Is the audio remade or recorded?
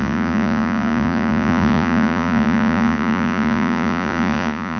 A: remade